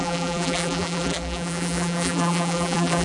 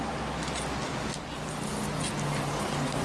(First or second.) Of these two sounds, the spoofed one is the first